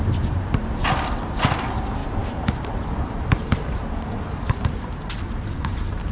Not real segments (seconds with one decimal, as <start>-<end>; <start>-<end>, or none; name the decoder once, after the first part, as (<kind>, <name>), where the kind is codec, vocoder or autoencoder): 2.0-6.1 (vocoder, BigVGAN v2)